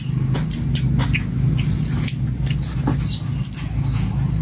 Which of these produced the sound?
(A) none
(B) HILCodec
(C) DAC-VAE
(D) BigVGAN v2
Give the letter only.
A